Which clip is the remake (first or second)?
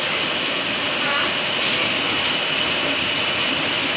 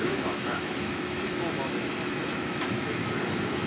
second